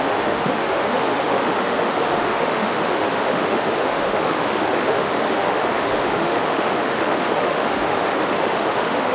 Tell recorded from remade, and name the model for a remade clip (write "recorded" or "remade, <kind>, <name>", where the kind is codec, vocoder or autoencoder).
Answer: remade, autoencoder, DAC-VAE